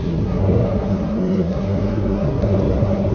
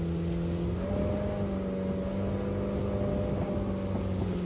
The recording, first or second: second